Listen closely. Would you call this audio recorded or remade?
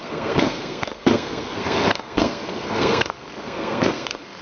remade